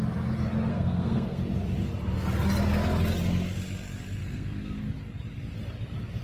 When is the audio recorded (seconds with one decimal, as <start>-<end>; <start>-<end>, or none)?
0.0-0.7; 1.4-4.2; 4.8-6.2